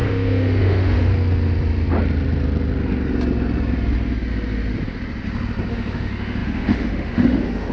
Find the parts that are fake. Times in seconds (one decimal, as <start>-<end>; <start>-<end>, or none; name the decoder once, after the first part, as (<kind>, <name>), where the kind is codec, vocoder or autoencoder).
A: 0.0-1.1 (autoencoder, DAC-VAE); 5.7-7.7